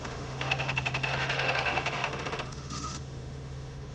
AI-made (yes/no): yes